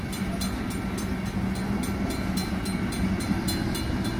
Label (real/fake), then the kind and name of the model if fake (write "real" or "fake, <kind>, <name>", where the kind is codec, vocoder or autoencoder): real